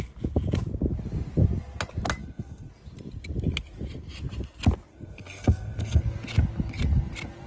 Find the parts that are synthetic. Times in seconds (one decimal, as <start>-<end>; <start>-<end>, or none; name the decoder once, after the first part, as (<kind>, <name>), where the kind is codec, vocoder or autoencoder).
2.2-2.7 (codec, SNAC); 4.9-6.0